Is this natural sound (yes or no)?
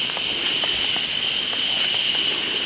yes